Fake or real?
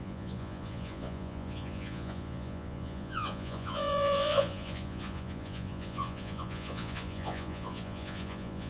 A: fake